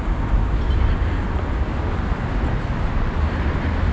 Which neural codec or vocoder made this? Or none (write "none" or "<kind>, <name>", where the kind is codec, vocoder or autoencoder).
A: none